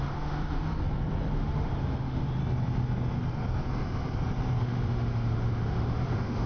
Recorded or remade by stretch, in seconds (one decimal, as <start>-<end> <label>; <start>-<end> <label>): 0.0-0.7 remade; 0.7-1.3 recorded; 1.3-2.4 remade; 2.4-4.6 recorded; 4.6-6.5 remade